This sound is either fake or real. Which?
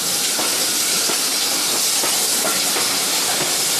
real